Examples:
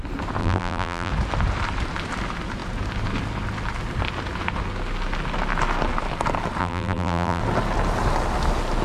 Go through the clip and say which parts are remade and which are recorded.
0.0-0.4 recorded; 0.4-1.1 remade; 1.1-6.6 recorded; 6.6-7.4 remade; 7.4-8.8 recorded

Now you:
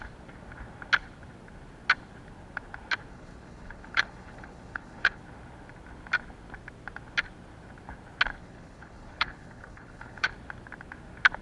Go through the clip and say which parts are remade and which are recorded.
0.0-3.1 recorded; 3.1-5.2 remade; 5.2-8.4 recorded; 8.4-10.3 remade; 10.3-11.4 recorded

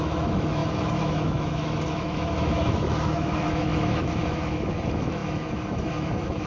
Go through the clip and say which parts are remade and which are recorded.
0.0-6.5 remade

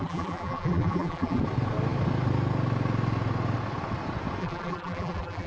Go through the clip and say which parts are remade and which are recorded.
0.0-1.4 remade; 1.4-4.4 recorded; 4.4-5.5 remade